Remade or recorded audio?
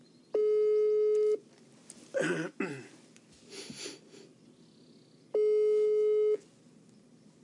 recorded